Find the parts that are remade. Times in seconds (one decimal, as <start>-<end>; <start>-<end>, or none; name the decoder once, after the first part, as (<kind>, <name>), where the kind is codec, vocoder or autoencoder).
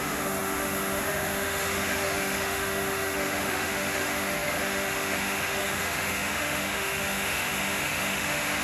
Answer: 0.0-8.6 (autoencoder, DAC-VAE)